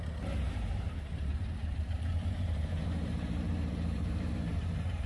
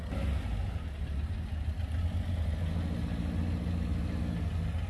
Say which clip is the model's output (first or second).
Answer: first